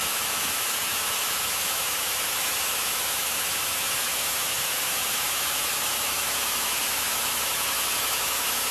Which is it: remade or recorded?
remade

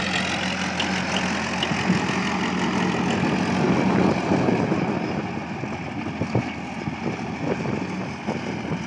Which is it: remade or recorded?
recorded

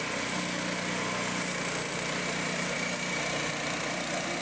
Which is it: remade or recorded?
recorded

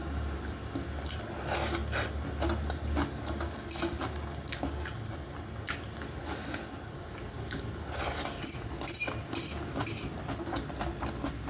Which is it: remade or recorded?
recorded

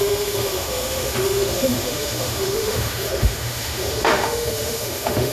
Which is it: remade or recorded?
remade